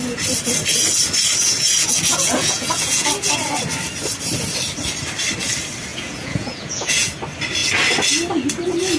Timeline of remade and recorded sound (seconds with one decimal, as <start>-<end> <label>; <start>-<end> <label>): 0.0-1.4 recorded; 1.4-3.1 remade; 3.1-5.9 recorded; 5.9-7.1 remade; 7.1-9.0 recorded

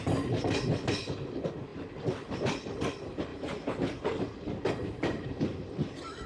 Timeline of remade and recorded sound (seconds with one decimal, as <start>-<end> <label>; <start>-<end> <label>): 0.0-0.6 remade; 0.6-3.3 recorded; 3.3-5.4 remade; 5.4-6.3 recorded

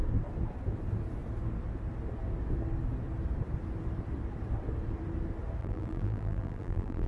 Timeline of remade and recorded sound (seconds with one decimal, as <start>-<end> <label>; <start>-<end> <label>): 0.0-5.6 recorded; 5.6-7.1 remade

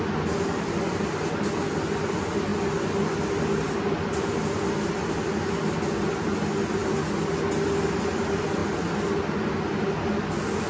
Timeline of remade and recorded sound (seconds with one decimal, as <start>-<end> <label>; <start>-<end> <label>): 0.0-10.7 recorded

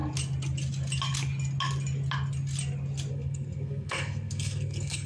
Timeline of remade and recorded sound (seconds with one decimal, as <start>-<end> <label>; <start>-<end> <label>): 0.0-3.1 recorded; 3.1-5.1 remade

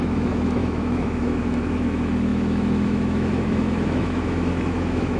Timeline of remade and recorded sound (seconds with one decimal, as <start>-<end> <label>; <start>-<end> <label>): 0.0-5.2 remade

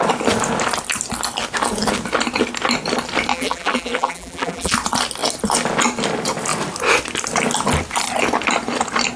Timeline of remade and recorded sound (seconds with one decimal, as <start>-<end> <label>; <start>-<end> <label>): 0.0-3.3 recorded; 3.3-4.7 remade; 4.7-9.2 recorded

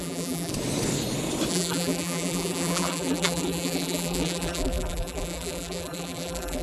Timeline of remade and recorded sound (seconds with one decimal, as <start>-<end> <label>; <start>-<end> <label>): 0.0-0.5 remade; 0.5-1.5 recorded; 1.5-6.6 remade